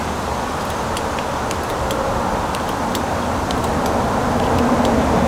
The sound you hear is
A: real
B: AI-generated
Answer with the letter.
A